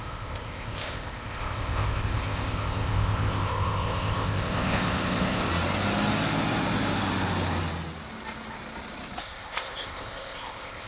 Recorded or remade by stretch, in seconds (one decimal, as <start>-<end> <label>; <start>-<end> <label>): 0.0-5.5 remade; 5.5-9.2 recorded; 9.2-10.9 remade